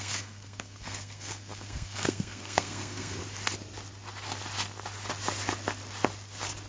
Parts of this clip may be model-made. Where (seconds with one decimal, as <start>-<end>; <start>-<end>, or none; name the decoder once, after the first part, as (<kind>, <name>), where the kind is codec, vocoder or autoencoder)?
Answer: 0.0-3.2 (codec, SNAC)